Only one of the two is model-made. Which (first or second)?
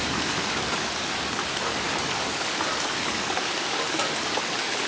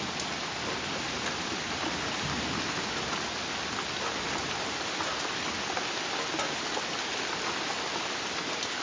first